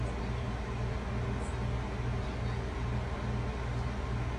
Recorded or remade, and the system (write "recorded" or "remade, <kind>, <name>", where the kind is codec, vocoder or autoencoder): recorded